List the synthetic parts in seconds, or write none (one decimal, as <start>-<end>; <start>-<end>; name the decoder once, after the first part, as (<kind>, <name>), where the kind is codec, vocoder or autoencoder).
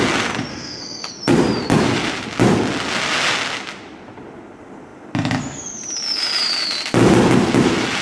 0.5-1.1 (codec, SNAC)